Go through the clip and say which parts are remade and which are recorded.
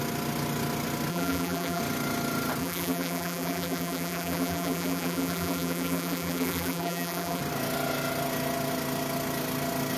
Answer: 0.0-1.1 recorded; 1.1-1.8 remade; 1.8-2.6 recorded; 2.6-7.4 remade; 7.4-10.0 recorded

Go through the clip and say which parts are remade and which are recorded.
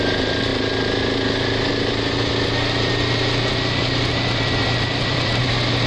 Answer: 0.0-4.1 recorded; 4.1-5.4 remade; 5.4-5.9 recorded